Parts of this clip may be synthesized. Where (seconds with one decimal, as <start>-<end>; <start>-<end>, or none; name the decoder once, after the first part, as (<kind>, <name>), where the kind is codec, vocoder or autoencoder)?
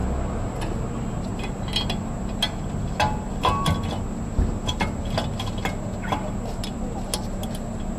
none